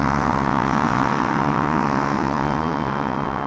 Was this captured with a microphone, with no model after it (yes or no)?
no